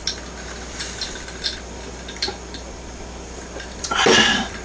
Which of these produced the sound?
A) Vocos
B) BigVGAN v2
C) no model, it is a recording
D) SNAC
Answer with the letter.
B